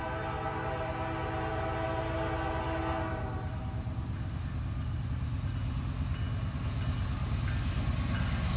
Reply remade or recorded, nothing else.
recorded